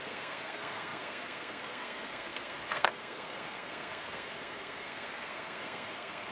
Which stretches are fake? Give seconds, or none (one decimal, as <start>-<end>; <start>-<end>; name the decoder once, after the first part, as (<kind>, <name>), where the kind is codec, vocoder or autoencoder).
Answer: 0.0-6.3 (codec, SNAC)